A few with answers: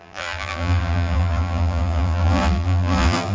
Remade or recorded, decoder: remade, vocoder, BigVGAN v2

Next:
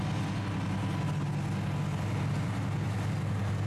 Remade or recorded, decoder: recorded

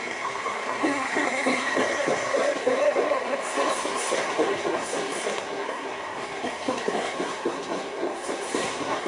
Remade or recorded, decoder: remade, codec, SNAC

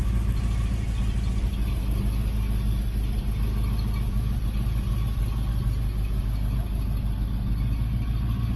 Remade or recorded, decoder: recorded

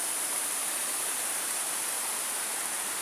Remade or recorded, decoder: remade, vocoder, BigVGAN v2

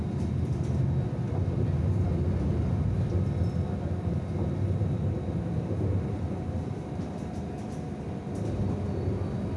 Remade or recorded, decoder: recorded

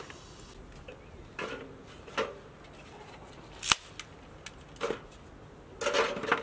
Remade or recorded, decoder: recorded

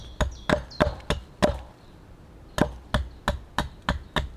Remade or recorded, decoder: recorded